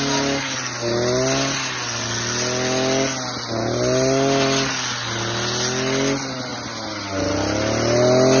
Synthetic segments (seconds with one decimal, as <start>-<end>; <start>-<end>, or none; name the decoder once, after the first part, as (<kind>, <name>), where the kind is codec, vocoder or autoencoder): none